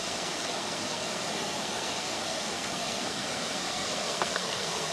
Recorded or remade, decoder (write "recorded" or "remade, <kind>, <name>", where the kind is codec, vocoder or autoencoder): remade, codec, SNAC